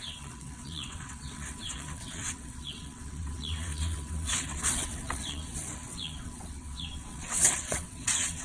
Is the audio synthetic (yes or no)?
yes